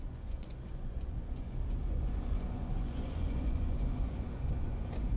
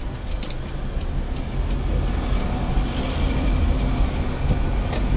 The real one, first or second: second